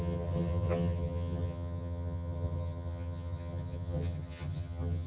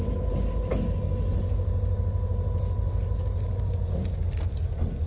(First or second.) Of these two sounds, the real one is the second